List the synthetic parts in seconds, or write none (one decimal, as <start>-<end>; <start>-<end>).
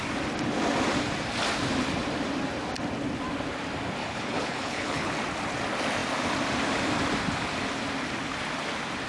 4.0-5.1